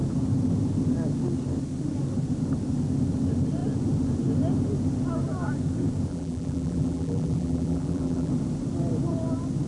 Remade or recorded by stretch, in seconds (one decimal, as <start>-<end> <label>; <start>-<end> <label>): 0.0-6.1 recorded; 6.1-8.3 remade; 8.3-9.7 recorded